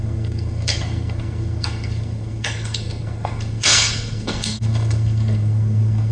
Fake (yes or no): yes